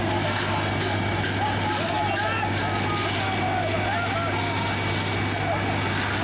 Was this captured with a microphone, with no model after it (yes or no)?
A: yes